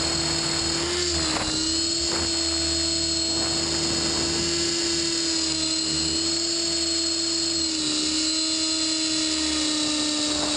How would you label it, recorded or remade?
recorded